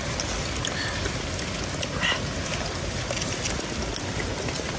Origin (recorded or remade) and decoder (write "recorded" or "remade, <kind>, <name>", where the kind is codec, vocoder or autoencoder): recorded